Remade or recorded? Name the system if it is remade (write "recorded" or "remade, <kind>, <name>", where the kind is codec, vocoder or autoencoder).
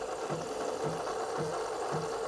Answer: recorded